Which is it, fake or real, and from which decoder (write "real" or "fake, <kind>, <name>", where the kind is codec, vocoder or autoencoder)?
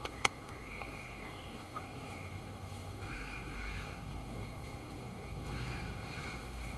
fake, codec, SNAC